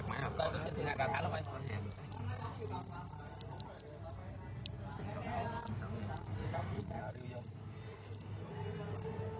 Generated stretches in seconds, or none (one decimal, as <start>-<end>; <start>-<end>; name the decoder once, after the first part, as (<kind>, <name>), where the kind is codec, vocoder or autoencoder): 6.4-7.0 (vocoder, Vocos)